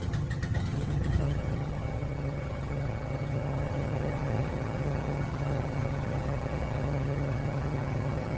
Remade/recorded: remade